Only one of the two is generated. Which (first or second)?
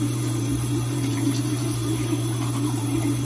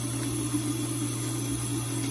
first